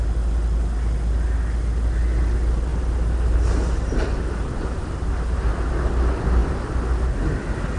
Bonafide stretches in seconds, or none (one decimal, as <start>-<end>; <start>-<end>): 0.0-2.7; 5.1-7.8

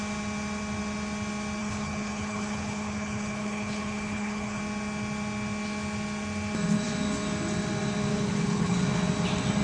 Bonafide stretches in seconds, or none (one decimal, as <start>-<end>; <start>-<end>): 0.0-1.6; 4.6-8.1; 8.8-9.6

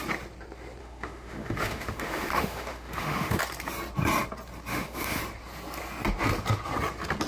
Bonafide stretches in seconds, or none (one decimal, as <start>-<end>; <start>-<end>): 0.0-0.8; 3.4-4.7; 5.2-7.3

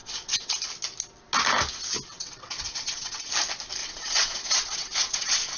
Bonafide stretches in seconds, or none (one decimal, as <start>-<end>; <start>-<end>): 0.5-2.1; 3.3-3.8